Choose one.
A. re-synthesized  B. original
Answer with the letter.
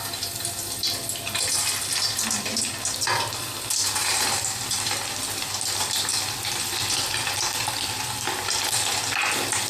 B